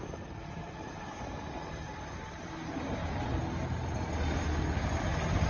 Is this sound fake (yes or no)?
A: no